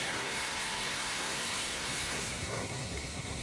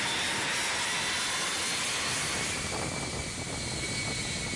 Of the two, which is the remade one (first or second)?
first